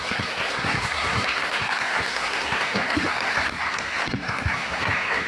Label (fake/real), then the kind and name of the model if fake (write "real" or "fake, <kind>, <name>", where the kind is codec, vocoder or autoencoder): fake, codec, SNAC